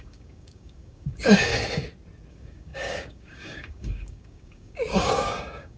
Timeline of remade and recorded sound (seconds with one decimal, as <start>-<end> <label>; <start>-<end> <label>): 0.0-1.5 remade; 1.5-2.3 recorded; 2.3-5.8 remade